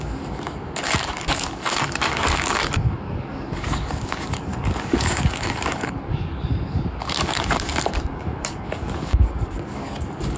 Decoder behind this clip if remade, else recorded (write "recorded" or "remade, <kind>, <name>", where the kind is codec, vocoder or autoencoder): remade, codec, DAC